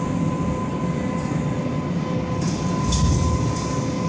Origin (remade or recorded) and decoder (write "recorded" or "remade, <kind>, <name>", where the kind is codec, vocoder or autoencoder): recorded